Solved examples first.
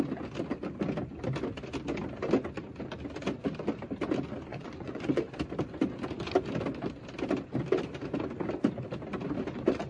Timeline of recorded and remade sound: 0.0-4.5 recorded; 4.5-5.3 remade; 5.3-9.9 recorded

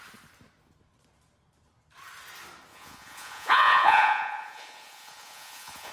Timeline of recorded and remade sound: 0.0-2.7 recorded; 2.7-5.9 remade

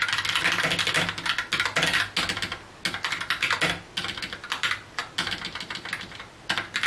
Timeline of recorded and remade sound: 0.0-6.9 recorded

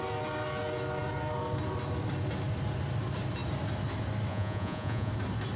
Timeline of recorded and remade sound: 0.0-4.3 recorded; 4.3-5.1 remade; 5.1-5.6 recorded

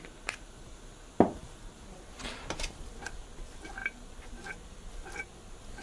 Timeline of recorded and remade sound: 0.0-1.4 recorded; 1.4-3.3 remade; 3.3-3.8 recorded; 3.8-4.9 remade; 4.9-5.8 recorded

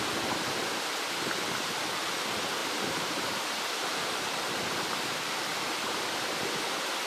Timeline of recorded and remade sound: 0.0-2.6 recorded; 2.6-6.5 remade; 6.5-7.1 recorded